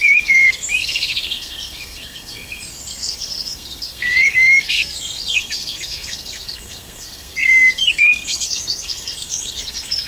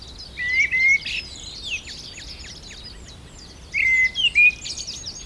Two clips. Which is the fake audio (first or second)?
first